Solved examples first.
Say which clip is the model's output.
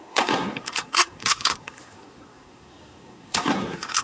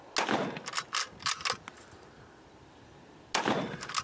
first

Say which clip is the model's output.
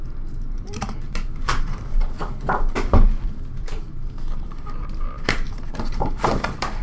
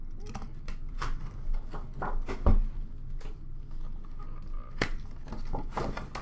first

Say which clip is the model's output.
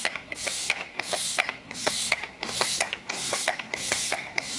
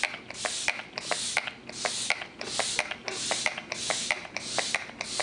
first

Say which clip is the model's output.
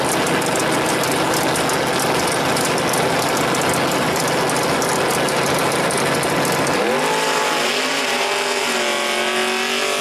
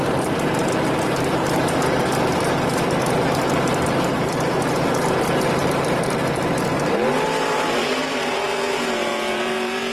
second